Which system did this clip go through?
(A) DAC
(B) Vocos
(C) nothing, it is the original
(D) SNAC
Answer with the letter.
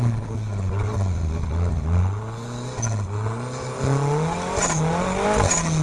C